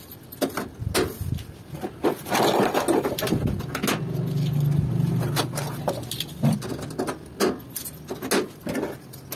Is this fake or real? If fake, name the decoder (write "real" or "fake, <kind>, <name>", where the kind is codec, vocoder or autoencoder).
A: real